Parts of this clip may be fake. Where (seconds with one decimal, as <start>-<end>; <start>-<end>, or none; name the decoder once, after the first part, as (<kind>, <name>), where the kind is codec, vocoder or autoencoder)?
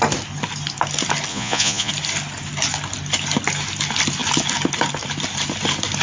1.3-1.9 (vocoder, Vocos)